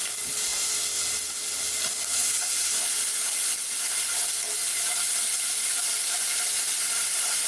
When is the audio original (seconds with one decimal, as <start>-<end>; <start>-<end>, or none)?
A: 0.0-7.5